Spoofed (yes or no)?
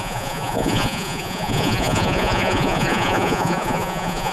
yes